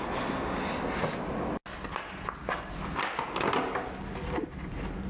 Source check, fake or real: real